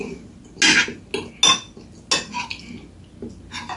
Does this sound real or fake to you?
real